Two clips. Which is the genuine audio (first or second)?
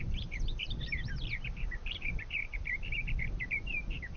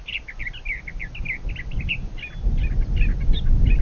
second